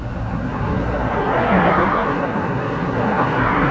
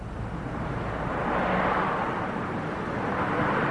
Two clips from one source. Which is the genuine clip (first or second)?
second